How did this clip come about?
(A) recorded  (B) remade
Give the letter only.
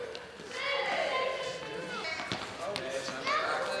A